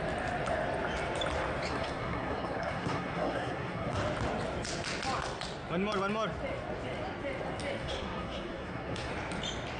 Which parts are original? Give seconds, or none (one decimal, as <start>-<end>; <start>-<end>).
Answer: 0.0-1.7; 4.0-7.8; 9.1-9.8